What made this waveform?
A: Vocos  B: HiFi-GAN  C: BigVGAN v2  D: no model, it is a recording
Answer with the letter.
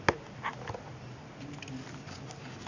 D